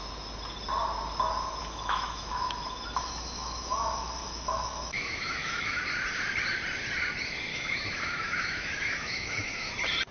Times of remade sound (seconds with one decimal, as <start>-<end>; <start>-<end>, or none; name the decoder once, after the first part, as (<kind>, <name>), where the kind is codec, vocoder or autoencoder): 1.6-5.8 (autoencoder, DAC-VAE); 7.5-9.7